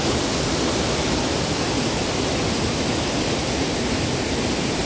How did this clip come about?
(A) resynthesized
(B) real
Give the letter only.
B